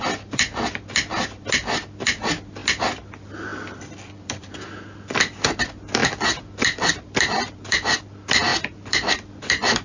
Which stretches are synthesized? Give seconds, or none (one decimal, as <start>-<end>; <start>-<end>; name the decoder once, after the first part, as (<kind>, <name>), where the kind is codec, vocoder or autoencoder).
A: 3.5-5.5 (vocoder, BigVGAN v2); 8.5-9.1